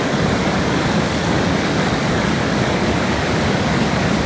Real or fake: fake